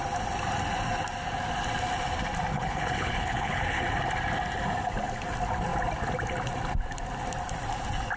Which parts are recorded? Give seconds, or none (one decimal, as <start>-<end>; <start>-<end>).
0.0-2.5; 3.8-8.2